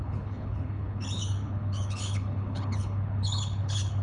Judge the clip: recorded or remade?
remade